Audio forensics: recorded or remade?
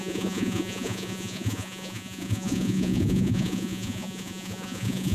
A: remade